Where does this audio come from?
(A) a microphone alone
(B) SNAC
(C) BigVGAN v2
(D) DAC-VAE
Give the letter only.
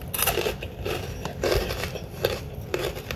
C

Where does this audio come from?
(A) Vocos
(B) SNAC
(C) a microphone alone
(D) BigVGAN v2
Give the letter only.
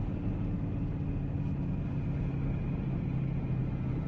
C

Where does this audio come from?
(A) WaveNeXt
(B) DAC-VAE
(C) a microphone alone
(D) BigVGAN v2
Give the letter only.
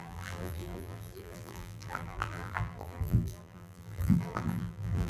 D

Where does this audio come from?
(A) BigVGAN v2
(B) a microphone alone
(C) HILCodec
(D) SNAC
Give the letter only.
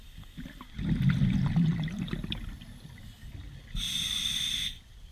B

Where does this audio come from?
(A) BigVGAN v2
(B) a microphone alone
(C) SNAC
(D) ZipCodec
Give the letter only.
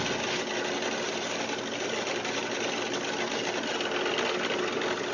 B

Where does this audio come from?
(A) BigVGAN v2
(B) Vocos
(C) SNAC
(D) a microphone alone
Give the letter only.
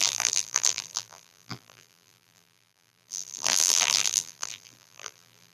A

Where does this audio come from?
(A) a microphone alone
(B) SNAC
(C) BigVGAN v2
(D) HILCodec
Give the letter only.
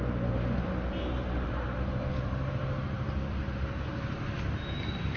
C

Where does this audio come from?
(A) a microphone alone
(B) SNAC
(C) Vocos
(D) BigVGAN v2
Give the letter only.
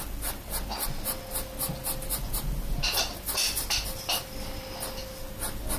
A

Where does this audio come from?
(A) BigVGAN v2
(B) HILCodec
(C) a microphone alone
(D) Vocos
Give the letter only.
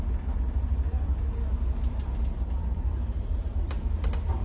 C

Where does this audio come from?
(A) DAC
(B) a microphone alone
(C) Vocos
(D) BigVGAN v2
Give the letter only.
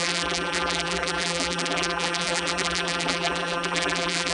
D